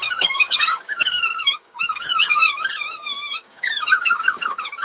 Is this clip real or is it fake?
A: fake